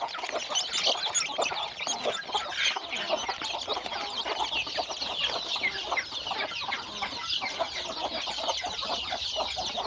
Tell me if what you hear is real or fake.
real